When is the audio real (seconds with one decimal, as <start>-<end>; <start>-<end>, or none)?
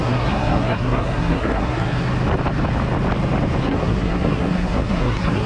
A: 2.1-3.6